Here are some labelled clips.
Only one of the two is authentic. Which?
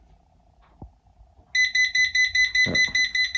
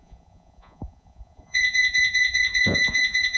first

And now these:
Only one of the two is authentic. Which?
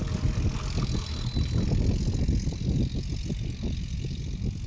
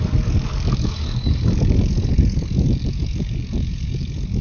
first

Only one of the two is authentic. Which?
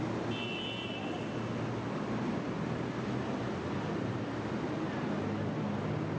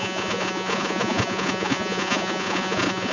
first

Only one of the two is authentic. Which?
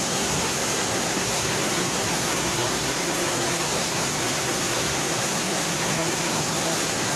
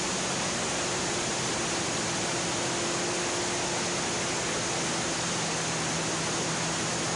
second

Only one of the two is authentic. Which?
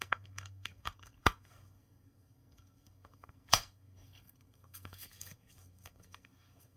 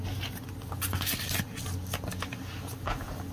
second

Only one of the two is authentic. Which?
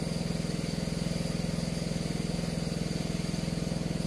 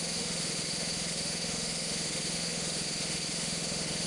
first